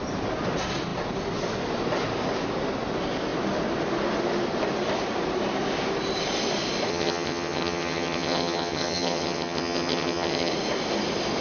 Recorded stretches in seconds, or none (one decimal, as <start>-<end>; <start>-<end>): 0.0-6.9; 10.5-11.4